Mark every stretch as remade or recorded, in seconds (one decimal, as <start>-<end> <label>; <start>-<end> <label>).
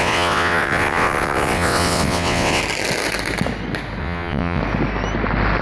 0.0-2.6 remade; 2.6-4.0 recorded; 4.0-4.6 remade; 4.6-5.6 recorded